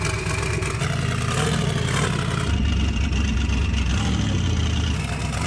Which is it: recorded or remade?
recorded